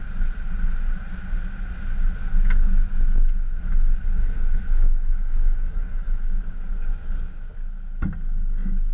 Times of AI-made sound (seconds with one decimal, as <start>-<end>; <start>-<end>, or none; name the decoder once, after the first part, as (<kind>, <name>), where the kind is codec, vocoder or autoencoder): 4.2-6.3 (codec, DAC)